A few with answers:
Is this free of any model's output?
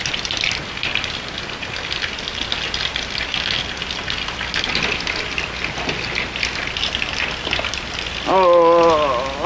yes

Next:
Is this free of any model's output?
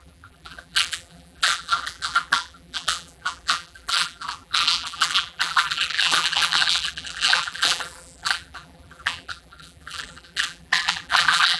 no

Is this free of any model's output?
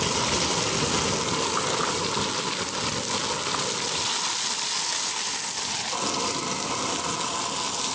yes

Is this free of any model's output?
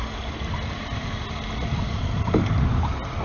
yes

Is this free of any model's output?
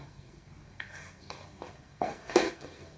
no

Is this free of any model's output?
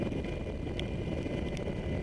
yes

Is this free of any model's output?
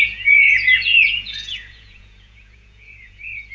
no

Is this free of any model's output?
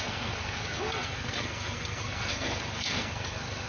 no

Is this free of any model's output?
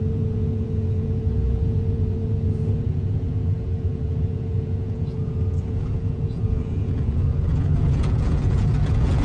no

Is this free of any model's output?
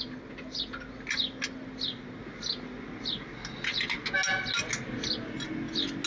yes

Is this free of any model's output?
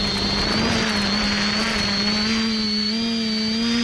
yes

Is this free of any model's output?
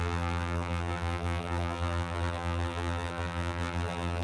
no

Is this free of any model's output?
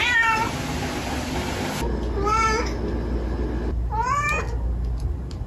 yes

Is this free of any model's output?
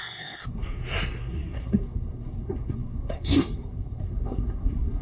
no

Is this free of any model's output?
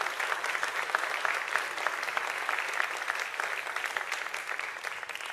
yes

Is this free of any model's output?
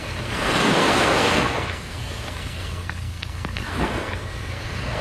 no